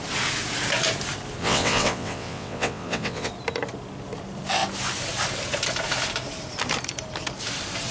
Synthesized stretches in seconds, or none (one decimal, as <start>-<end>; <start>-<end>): 1.4-3.3